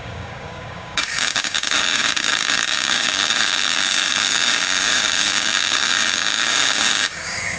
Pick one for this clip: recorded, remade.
remade